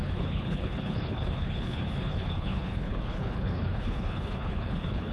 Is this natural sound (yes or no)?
no